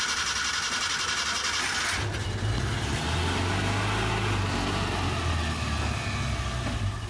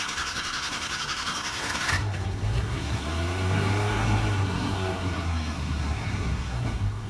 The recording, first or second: first